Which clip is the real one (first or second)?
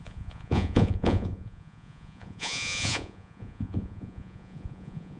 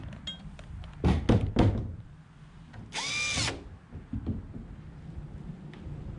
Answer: second